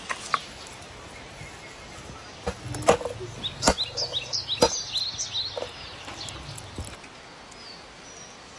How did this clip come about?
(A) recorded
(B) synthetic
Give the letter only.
A